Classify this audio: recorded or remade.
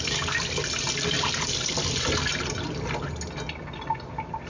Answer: recorded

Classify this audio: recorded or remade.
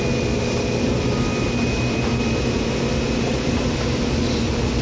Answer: recorded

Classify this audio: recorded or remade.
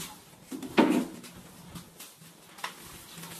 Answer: recorded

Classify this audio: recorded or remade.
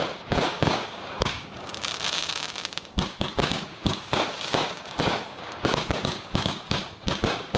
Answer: remade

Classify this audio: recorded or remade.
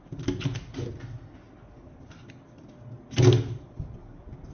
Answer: recorded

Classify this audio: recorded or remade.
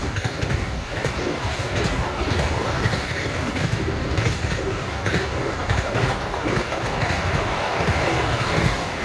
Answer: remade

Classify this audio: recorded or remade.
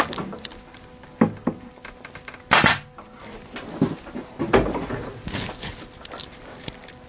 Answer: recorded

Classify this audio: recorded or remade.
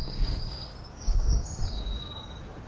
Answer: remade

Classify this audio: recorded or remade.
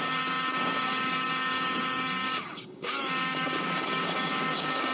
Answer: remade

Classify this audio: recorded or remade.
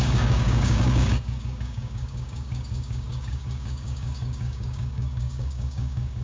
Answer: remade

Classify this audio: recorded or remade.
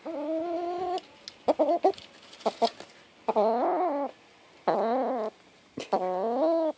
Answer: recorded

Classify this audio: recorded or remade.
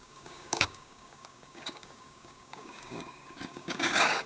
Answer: remade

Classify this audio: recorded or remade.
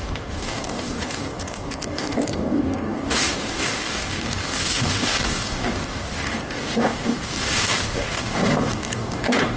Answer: remade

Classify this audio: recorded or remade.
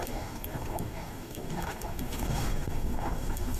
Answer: remade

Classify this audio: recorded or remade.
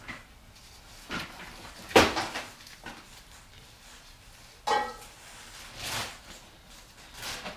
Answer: recorded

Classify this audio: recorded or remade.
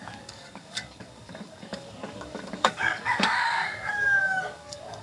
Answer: remade